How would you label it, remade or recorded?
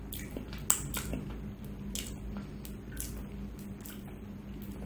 recorded